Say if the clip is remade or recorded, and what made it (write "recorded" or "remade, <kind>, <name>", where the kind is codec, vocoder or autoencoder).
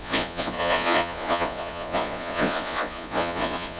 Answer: remade, vocoder, Vocos